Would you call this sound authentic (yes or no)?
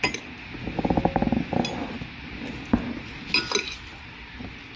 yes